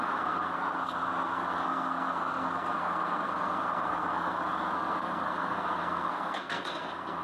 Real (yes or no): no